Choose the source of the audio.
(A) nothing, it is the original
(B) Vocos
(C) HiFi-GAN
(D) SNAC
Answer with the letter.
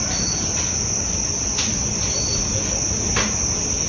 A